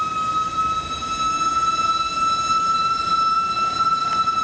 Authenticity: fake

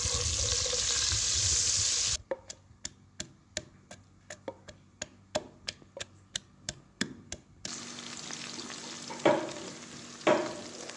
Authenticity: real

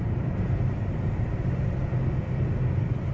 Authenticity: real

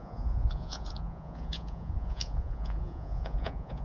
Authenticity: fake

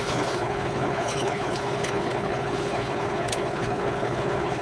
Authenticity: fake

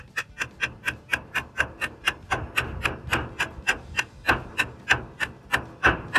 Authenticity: real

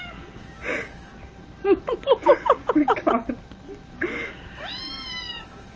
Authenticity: fake